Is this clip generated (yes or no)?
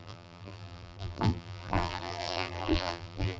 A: yes